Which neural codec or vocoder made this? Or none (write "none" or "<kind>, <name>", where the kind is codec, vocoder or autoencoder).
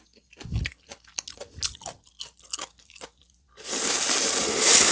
none